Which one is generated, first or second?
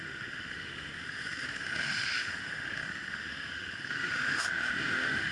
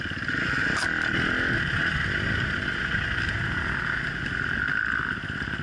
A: first